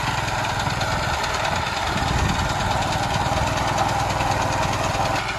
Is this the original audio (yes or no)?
yes